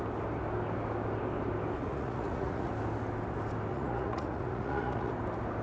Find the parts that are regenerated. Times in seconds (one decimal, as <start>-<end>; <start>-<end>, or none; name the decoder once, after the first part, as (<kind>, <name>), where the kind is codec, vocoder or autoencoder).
1.8-2.7 (vocoder, Vocos); 3.7-5.1